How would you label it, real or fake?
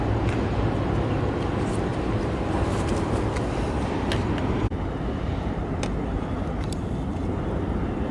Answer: real